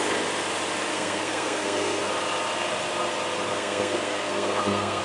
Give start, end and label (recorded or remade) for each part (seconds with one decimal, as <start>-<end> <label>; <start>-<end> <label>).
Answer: 0.0-0.9 recorded; 0.9-2.1 remade; 2.1-3.5 recorded; 3.5-5.0 remade